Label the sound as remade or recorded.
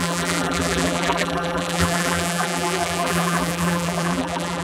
remade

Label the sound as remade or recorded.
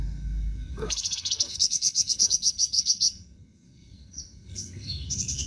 remade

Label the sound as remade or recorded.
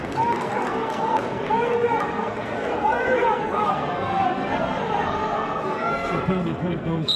remade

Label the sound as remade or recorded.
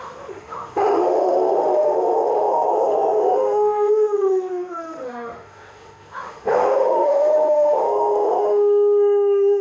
remade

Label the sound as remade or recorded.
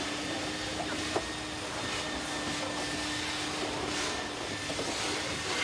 recorded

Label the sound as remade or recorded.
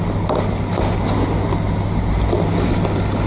recorded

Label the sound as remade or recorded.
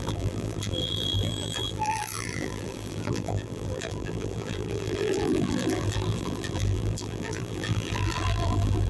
remade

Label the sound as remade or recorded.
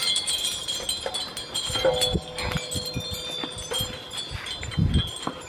recorded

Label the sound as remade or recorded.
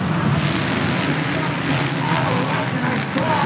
recorded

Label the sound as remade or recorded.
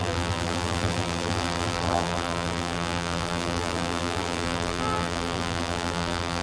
remade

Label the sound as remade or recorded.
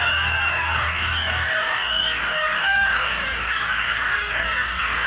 remade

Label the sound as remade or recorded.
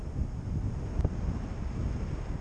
recorded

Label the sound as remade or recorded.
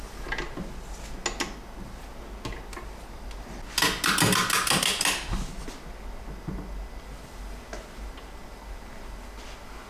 recorded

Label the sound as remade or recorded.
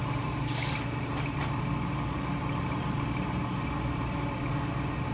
recorded